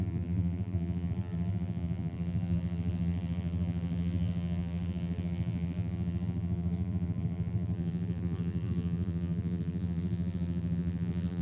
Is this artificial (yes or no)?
yes